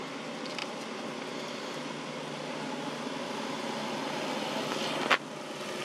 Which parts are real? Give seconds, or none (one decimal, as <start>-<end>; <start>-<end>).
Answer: 0.0-5.8